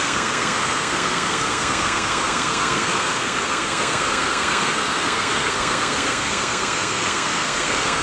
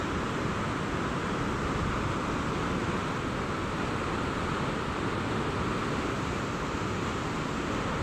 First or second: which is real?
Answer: second